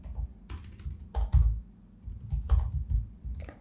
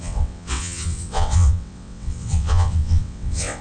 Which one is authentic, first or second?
first